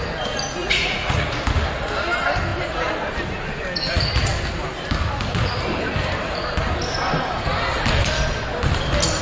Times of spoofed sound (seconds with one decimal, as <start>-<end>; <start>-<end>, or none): 0.6-1.4